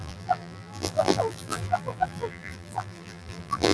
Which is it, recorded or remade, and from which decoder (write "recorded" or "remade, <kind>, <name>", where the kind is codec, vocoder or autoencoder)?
remade, vocoder, BigVGAN v2